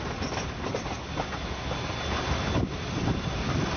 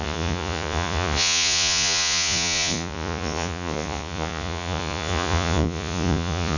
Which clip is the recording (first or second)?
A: first